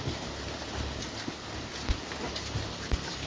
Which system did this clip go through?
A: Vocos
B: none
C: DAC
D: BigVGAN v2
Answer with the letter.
B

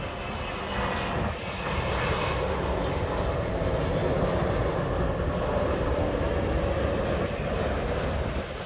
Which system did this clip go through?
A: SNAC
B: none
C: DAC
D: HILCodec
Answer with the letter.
B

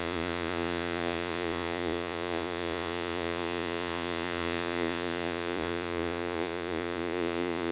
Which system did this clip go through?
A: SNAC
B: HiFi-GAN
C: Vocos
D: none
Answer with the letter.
C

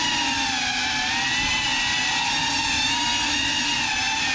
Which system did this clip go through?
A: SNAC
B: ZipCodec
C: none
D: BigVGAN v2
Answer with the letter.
C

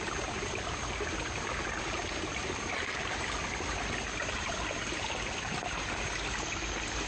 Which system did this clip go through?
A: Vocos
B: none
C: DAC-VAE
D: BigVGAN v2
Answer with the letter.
B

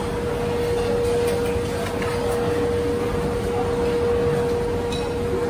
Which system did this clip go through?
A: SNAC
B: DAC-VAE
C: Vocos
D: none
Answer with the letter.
D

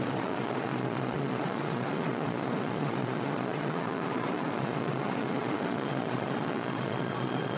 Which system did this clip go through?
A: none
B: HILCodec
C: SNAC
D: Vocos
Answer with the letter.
D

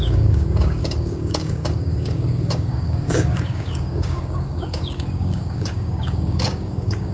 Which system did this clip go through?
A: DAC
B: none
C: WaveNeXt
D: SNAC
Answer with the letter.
A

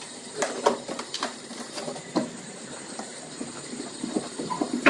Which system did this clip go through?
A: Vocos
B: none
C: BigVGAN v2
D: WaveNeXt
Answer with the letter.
C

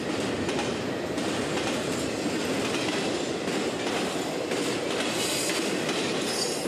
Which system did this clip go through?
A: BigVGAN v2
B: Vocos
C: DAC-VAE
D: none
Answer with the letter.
A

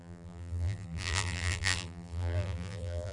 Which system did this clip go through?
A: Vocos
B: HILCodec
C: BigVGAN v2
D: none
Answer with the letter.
C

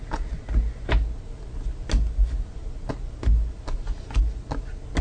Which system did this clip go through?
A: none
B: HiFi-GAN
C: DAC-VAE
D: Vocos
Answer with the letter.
A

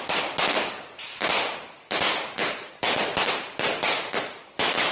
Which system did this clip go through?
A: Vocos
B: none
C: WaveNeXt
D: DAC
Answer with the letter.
B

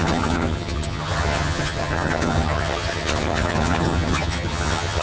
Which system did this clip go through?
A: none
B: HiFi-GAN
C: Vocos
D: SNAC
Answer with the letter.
B